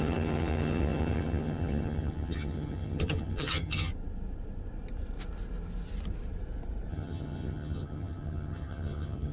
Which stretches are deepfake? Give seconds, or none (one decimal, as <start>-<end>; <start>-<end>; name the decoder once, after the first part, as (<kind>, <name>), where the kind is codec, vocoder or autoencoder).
0.0-3.9 (vocoder, HiFi-GAN); 6.9-9.3